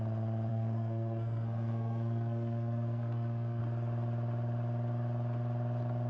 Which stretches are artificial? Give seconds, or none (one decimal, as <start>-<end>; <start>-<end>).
0.5-3.6